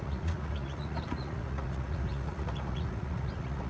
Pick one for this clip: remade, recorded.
remade